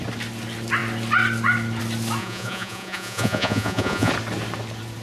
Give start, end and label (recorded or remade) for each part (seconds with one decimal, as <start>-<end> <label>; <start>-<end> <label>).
0.0-2.2 recorded; 2.2-4.1 remade; 4.1-5.0 recorded